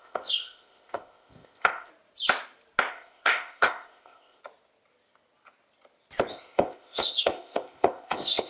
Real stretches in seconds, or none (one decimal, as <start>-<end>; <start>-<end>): 1.9-2.9; 4.4-6.3